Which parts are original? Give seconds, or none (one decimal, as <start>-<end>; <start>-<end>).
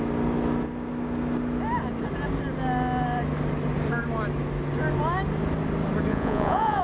0.0-6.1